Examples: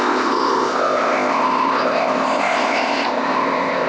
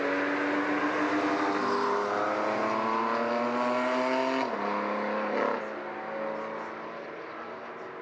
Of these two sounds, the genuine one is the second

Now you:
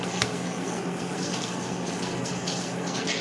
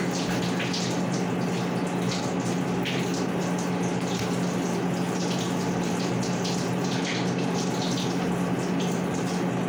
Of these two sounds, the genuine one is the second